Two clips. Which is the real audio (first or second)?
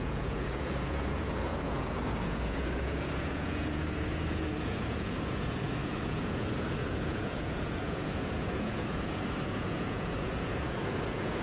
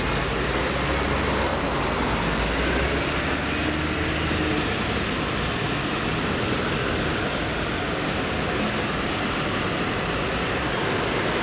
second